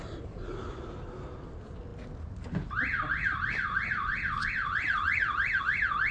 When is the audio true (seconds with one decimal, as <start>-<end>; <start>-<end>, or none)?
0.0-6.1